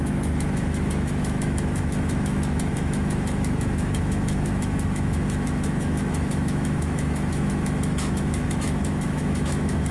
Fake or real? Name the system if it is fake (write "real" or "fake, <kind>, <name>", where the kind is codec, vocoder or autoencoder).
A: fake, autoencoder, DAC-VAE